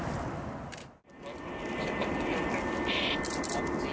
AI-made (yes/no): no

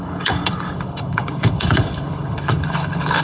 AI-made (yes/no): yes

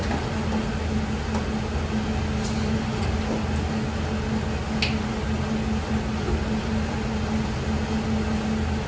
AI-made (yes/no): no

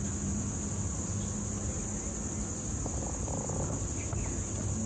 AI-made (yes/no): no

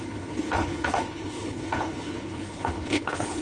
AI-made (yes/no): yes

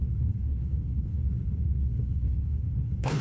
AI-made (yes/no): yes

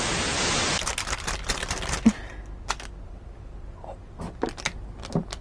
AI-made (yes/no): no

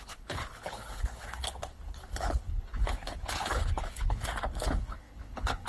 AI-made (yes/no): yes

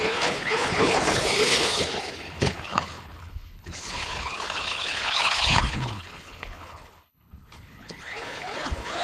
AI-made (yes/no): yes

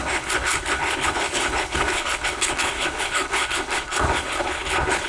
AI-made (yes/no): yes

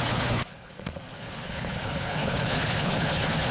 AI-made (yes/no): yes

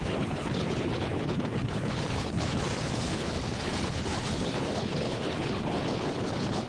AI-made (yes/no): yes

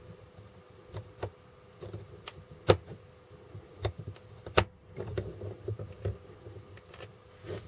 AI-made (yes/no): no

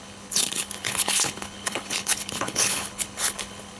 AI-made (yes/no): yes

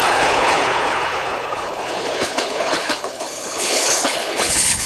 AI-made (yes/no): yes